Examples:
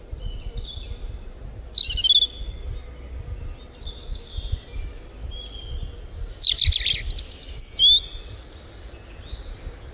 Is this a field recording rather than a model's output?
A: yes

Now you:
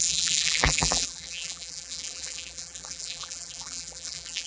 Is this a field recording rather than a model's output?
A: no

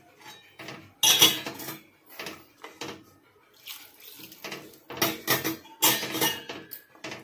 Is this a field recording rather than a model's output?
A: yes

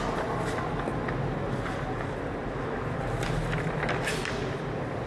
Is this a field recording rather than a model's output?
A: yes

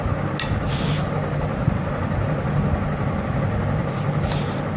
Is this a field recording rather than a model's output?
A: yes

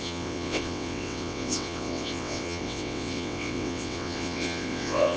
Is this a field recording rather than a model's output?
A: no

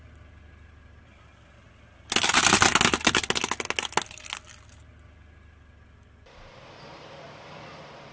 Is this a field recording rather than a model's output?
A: yes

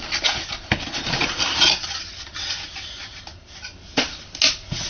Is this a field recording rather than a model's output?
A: yes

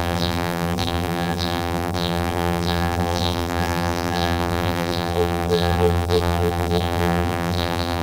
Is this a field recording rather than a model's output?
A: no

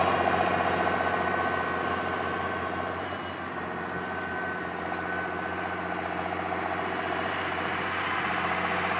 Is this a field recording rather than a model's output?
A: yes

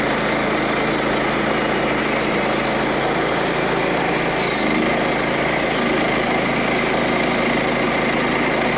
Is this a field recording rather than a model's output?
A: yes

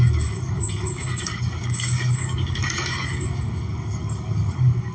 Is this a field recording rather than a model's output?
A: no